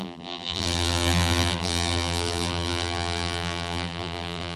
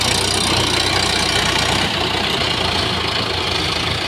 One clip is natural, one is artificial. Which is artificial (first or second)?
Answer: first